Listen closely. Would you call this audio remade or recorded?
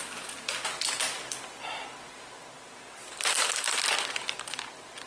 recorded